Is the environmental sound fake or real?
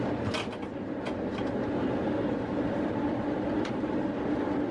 real